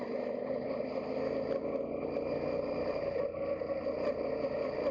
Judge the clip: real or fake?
real